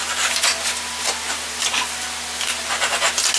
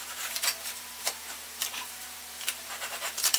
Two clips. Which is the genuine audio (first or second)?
first